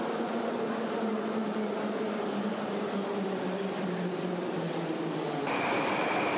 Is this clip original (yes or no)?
no